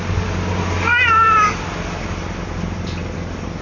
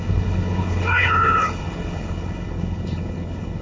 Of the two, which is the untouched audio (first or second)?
first